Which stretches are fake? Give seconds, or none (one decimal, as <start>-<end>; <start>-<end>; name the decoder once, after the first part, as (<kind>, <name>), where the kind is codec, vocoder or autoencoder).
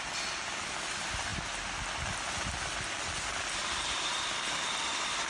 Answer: none